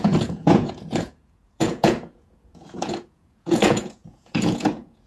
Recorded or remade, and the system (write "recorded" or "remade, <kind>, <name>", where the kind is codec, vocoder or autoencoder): remade, vocoder, Vocos